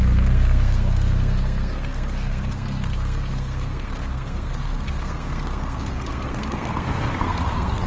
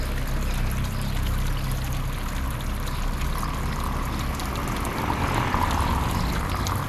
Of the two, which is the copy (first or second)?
first